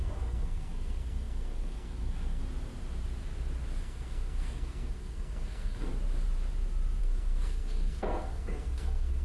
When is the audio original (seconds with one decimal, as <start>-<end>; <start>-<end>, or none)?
2.4-3.8; 5.9-7.0